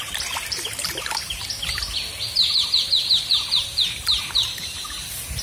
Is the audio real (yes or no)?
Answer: no